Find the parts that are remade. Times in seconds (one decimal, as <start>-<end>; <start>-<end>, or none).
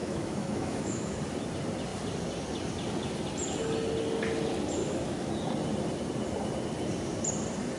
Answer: 0.0-1.2; 4.8-5.3